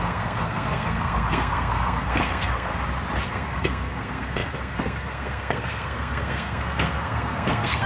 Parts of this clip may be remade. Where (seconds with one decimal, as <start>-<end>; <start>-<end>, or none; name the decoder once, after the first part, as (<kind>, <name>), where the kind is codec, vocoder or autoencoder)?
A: 0.0-2.7 (codec, SNAC); 3.3-7.9